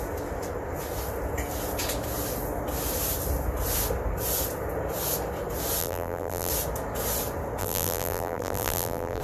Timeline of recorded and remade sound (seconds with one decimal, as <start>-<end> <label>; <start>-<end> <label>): 0.0-5.8 recorded; 5.8-6.5 remade; 6.5-7.6 recorded; 7.6-9.2 remade